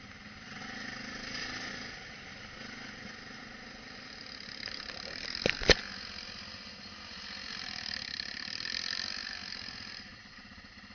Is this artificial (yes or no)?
no